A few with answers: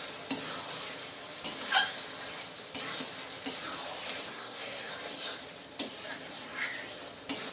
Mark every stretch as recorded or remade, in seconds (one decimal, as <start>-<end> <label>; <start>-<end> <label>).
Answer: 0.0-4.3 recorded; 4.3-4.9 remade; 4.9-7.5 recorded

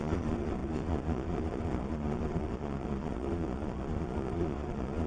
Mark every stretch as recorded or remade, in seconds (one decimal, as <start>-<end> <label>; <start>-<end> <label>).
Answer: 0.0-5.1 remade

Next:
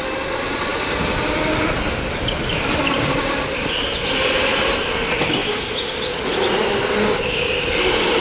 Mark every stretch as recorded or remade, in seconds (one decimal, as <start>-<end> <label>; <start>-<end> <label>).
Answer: 0.0-0.7 recorded; 0.7-3.8 remade; 3.8-8.2 recorded